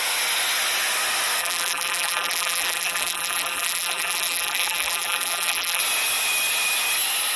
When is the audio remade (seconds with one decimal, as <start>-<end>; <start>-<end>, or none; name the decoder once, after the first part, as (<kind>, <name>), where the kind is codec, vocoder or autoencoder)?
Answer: 1.4-5.8 (vocoder, BigVGAN v2)